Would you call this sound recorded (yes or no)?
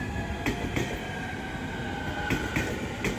yes